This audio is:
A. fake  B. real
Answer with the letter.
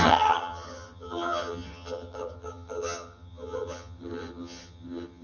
A